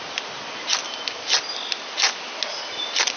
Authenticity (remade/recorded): recorded